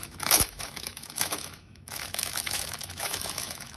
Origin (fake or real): fake